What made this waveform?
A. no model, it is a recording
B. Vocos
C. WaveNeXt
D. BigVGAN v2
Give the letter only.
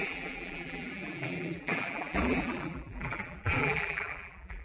D